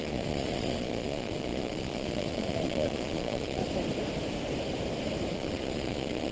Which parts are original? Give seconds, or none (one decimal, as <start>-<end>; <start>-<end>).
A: 3.6-5.3